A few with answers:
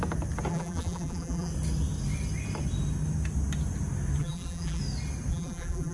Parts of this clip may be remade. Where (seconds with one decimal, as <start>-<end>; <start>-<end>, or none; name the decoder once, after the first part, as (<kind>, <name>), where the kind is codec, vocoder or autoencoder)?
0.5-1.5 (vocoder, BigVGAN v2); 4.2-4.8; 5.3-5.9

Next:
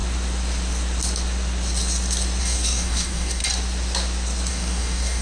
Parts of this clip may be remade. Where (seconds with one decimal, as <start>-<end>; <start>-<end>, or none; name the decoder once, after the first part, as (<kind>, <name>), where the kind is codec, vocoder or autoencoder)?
2.4-3.4 (codec, DAC); 4.5-5.2

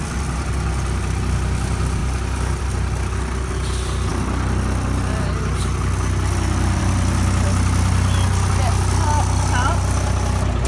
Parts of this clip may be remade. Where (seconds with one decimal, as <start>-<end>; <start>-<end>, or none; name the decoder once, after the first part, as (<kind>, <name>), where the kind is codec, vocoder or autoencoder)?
none

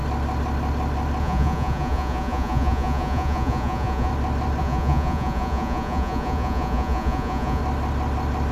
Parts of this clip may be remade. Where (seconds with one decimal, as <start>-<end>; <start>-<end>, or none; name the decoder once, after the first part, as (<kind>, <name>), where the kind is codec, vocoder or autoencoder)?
1.2-4.1 (vocoder, Vocos); 4.6-7.6

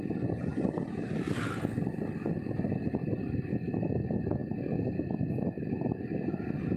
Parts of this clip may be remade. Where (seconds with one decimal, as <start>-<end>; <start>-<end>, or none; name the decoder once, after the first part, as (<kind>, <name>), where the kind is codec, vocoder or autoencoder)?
0.5-3.4 (vocoder, BigVGAN v2)

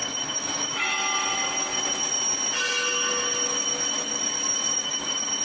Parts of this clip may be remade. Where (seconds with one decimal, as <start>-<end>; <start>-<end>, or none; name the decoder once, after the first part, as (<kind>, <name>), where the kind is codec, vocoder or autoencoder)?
0.0-0.9 (autoencoder, DAC-VAE); 4.7-5.4

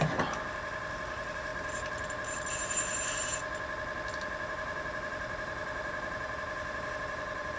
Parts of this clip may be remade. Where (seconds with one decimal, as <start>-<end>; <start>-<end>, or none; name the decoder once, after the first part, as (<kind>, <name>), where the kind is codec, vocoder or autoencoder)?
0.0-3.4 (vocoder, BigVGAN v2); 4.2-7.6